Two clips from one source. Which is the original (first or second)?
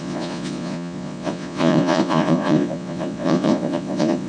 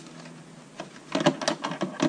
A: second